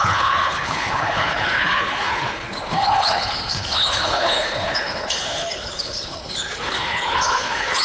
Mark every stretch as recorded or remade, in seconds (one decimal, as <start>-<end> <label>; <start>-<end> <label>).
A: 0.0-7.8 remade